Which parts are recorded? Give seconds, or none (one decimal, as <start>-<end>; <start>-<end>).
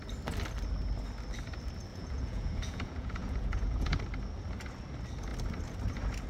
0.0-1.9; 4.0-6.3